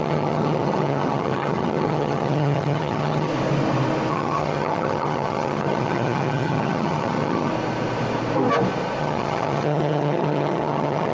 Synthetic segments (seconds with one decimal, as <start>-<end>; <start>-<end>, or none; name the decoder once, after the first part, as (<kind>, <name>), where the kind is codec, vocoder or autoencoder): 0.0-3.3 (vocoder, HiFi-GAN); 4.1-7.5; 9.0-11.1